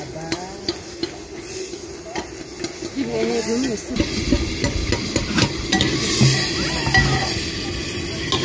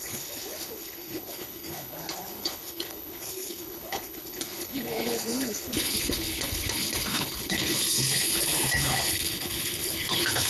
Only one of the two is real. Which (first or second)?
first